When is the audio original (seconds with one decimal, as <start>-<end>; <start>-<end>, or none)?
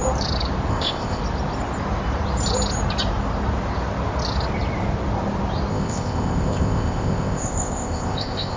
0.0-0.7; 1.2-5.7